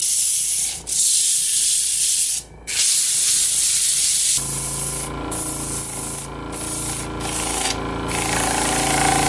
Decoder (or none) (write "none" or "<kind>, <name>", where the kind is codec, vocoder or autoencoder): none